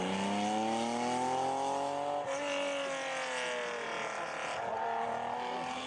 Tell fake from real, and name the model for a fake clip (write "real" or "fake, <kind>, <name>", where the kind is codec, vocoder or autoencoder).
real